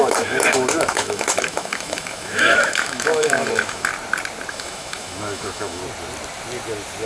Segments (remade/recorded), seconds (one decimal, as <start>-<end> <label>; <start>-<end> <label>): 0.0-3.9 remade; 3.9-4.5 recorded; 4.5-5.8 remade; 5.8-7.1 recorded